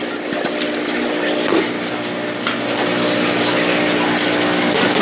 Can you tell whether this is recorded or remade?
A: recorded